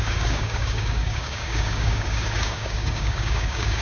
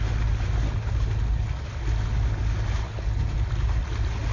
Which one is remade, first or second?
first